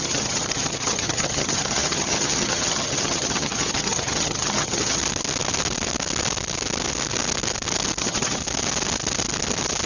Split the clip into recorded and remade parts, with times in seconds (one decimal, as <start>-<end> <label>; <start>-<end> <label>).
0.0-5.0 remade; 5.0-8.0 recorded; 8.0-8.4 remade; 8.4-9.9 recorded